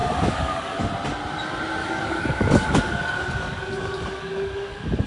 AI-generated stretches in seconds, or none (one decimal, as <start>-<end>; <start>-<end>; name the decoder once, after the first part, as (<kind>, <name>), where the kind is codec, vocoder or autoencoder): 0.0-0.8 (codec, DAC); 1.8-5.1